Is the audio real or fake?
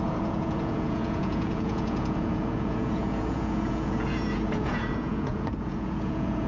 fake